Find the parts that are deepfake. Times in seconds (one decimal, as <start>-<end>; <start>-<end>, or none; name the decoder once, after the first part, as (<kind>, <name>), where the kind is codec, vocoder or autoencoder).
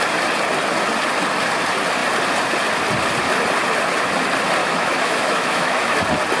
4.6-6.0 (autoencoder, DAC-VAE)